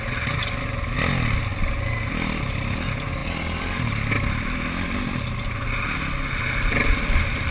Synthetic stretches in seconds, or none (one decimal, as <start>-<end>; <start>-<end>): none